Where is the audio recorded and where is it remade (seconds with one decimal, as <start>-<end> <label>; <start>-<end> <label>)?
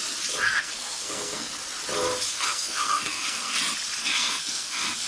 0.0-0.6 recorded; 0.6-1.5 remade; 1.5-2.3 recorded; 2.3-3.6 remade; 3.6-4.0 recorded; 4.0-5.1 remade